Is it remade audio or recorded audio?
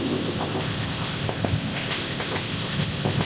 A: remade